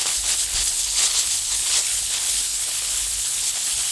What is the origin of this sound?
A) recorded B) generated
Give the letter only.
B